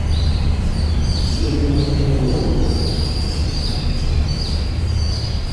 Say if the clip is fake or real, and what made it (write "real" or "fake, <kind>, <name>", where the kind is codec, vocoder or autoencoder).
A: fake, vocoder, BigVGAN v2